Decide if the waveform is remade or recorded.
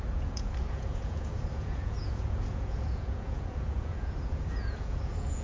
remade